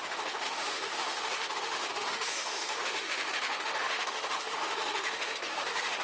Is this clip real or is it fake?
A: fake